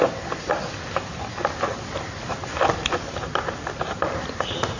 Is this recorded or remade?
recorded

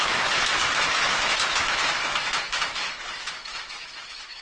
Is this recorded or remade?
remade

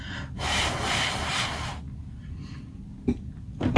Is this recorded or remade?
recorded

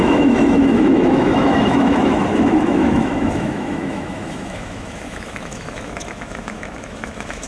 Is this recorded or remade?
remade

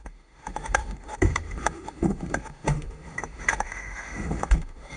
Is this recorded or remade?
remade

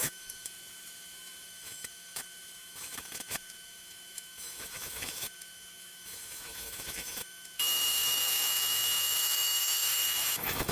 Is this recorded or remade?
remade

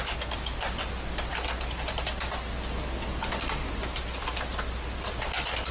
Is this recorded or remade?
recorded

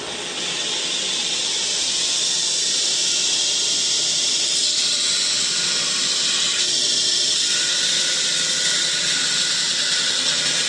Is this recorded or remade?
recorded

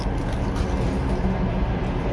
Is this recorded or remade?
recorded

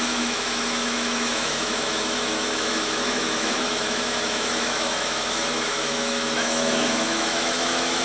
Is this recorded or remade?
remade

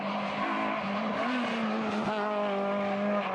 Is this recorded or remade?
recorded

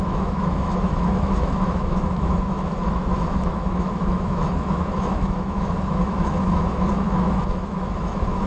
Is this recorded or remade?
remade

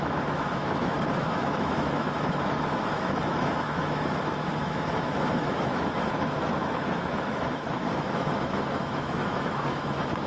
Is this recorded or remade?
remade